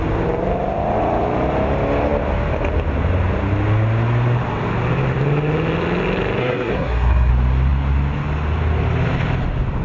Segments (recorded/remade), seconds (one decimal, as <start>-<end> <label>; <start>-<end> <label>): 0.0-6.4 recorded; 6.4-7.3 remade; 7.3-9.8 recorded